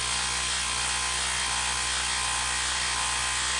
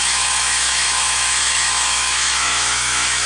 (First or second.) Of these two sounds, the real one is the first